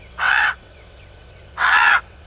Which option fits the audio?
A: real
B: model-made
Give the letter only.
B